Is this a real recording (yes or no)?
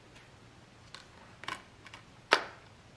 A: yes